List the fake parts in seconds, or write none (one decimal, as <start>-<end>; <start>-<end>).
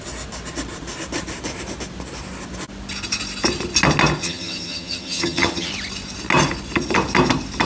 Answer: 4.2-5.7